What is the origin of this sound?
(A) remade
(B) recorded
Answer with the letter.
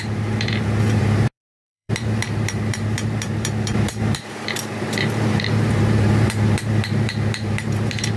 A